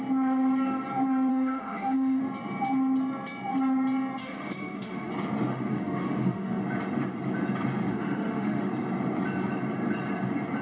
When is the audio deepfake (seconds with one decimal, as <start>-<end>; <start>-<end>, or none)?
1.3-2.2; 4.2-5.1; 5.5-6.6; 7.9-8.7